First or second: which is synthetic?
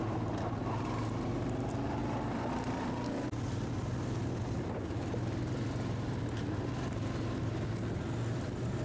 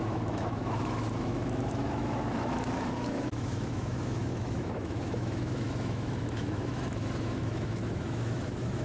second